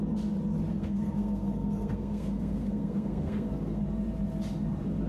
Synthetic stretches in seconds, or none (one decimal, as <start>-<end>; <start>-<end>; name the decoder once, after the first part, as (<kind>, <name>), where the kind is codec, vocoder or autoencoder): 0.7-3.8 (codec, SNAC)